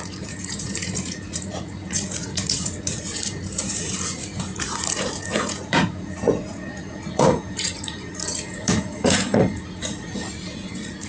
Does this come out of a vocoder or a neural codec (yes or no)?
yes